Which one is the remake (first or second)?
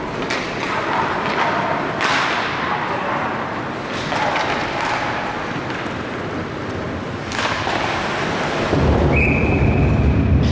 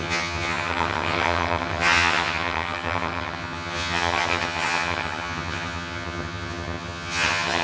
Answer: second